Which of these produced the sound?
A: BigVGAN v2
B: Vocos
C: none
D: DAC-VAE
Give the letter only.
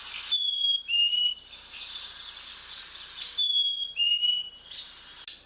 C